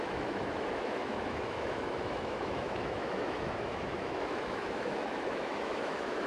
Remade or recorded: remade